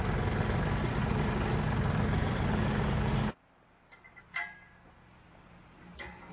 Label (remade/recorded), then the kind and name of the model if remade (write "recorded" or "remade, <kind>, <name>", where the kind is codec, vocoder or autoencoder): recorded